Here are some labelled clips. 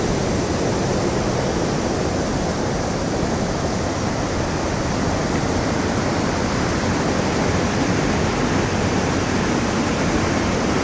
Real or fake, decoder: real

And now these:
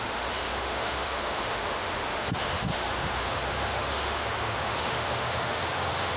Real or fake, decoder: fake, autoencoder, DAC-VAE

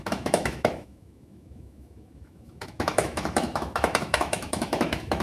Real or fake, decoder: fake, autoencoder, DAC-VAE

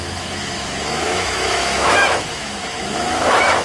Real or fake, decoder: fake, autoencoder, DAC-VAE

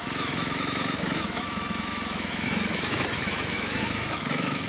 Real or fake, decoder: fake, autoencoder, DAC-VAE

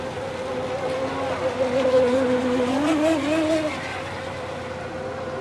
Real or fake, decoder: real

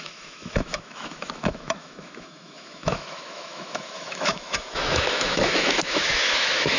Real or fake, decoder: fake, autoencoder, DAC-VAE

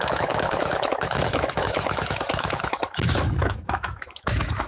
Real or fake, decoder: fake, autoencoder, DAC-VAE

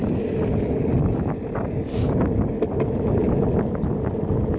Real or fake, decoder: real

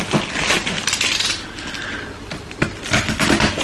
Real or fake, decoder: real